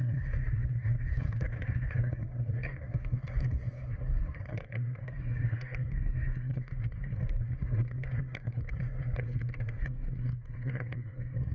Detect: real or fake fake